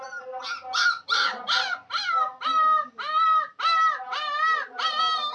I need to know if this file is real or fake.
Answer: real